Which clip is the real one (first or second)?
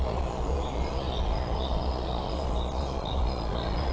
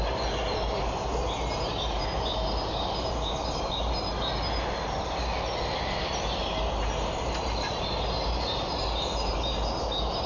second